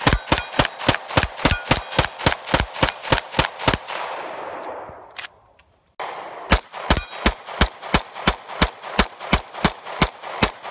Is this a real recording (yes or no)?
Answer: yes